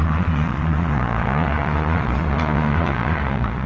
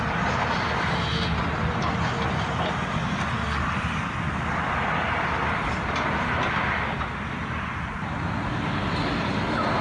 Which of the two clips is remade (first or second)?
first